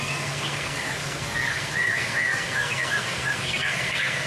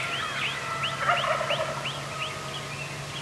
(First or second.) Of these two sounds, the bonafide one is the second